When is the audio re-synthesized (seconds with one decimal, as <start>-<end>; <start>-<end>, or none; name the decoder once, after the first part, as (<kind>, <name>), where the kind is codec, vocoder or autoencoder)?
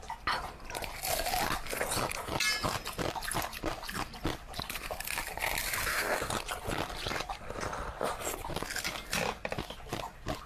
5.8-6.3 (codec, SNAC)